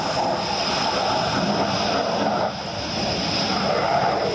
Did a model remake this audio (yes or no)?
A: no